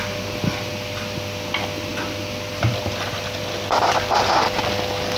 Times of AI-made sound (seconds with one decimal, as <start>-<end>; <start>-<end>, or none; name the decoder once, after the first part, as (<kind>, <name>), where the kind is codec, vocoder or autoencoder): none